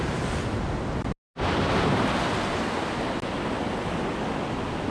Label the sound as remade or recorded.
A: recorded